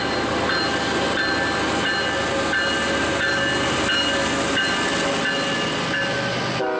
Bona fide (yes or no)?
yes